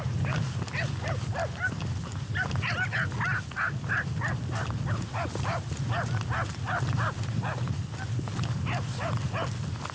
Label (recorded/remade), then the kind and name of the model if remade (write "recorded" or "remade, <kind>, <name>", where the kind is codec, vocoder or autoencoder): recorded